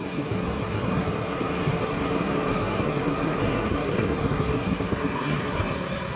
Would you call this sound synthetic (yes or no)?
yes